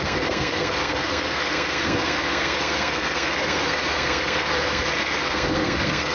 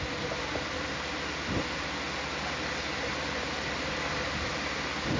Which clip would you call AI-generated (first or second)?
first